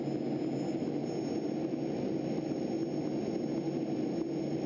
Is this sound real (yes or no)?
yes